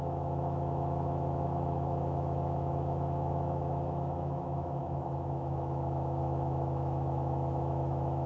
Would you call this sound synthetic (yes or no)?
yes